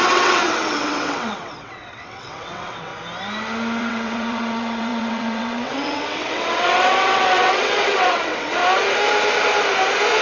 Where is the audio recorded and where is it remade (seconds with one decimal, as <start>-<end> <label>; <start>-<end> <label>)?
0.0-2.9 remade; 2.9-3.8 recorded; 3.8-8.6 remade; 8.6-10.2 recorded